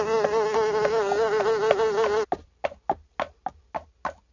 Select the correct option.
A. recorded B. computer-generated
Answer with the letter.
A